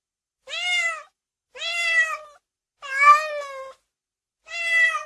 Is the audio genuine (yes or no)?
yes